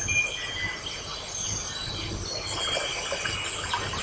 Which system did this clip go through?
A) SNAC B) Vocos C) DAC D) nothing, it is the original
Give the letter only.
D